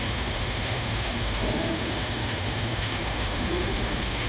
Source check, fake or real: fake